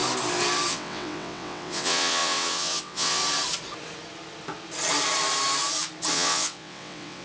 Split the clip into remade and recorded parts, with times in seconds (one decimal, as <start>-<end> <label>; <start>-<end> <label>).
0.0-0.7 recorded; 0.7-3.2 remade; 3.2-6.1 recorded; 6.1-7.2 remade